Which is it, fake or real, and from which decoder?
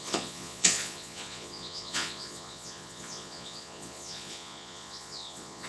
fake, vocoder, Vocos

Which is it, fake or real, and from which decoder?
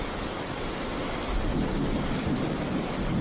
real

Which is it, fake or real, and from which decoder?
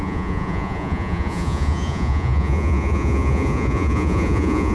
fake, vocoder, Vocos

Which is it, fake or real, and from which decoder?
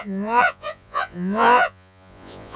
fake, vocoder, Vocos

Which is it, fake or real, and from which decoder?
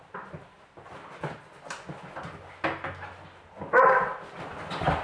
real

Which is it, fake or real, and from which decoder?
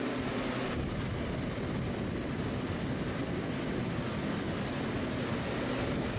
real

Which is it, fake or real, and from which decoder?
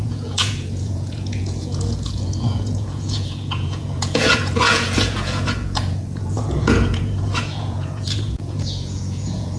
fake, vocoder, Vocos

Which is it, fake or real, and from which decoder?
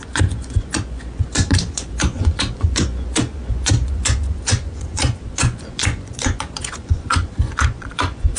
fake, vocoder, Vocos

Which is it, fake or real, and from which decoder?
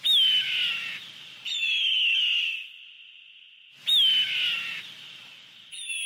real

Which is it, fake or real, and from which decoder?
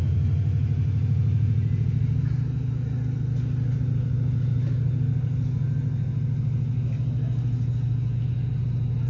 real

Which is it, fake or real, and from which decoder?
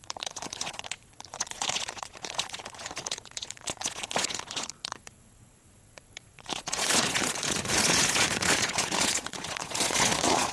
fake, vocoder, Vocos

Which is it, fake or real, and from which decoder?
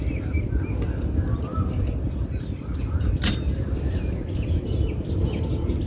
real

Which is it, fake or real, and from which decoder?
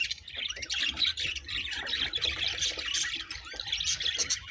real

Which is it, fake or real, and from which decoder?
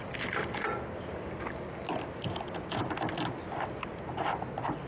real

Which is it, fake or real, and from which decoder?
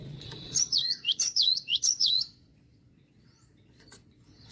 fake, vocoder, Vocos